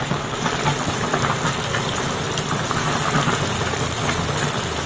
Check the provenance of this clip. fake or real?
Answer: real